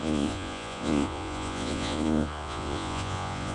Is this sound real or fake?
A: fake